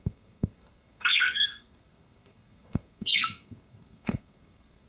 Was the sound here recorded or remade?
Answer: remade